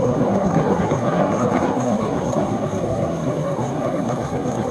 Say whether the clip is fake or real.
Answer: fake